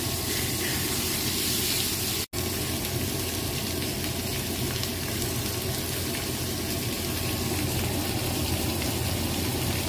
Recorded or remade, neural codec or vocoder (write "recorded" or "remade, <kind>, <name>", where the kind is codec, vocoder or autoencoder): recorded